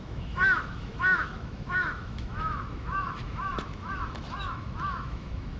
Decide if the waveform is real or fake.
fake